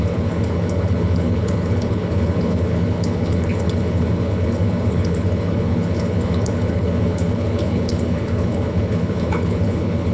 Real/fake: fake